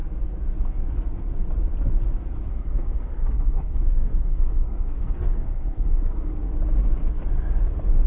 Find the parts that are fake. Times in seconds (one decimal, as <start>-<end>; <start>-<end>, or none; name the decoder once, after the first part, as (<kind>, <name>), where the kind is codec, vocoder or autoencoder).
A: 2.5-6.3 (codec, SNAC)